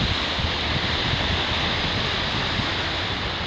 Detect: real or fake real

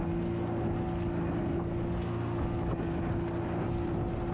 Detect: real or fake real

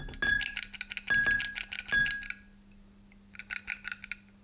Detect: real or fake real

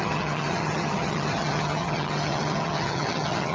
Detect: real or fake fake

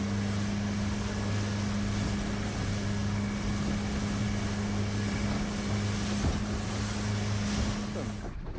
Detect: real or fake real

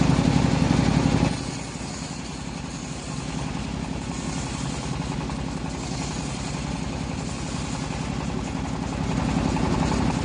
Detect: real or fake real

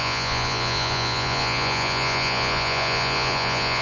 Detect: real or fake fake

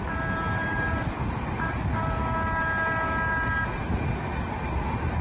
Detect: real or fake real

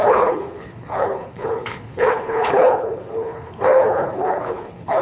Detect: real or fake fake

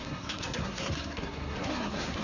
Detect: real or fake fake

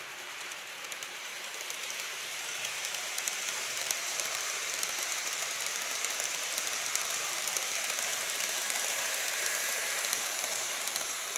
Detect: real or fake fake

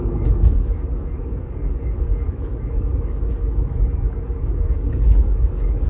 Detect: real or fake fake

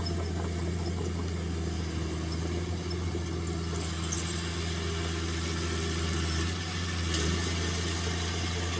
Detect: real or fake real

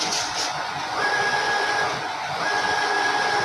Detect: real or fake fake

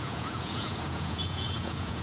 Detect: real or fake fake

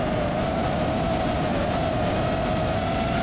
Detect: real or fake fake